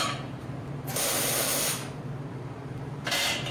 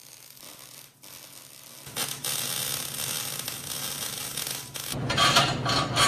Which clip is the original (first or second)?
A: second